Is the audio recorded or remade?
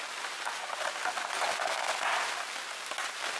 recorded